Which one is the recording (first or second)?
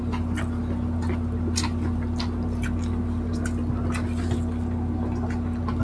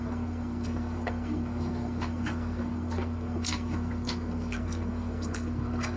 first